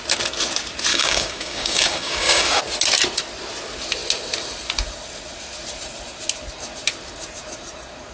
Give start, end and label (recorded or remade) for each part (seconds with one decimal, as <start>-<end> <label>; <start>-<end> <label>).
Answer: 0.0-0.9 recorded; 0.9-2.6 remade; 2.6-8.1 recorded